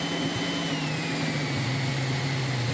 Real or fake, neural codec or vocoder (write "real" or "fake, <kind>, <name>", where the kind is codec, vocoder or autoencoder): real